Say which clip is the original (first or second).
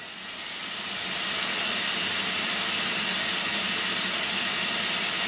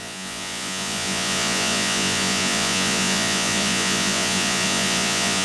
first